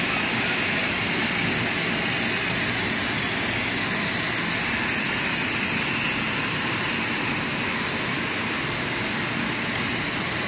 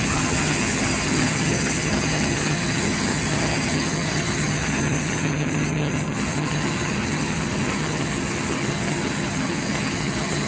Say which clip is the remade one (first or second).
second